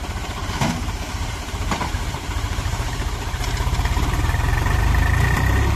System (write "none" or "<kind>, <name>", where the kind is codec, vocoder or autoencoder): vocoder, BigVGAN v2